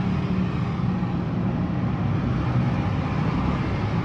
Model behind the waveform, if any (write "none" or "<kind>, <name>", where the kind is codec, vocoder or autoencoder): none